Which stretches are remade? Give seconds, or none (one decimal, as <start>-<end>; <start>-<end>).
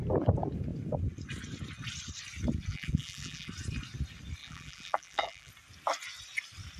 2.7-3.5; 4.4-5.5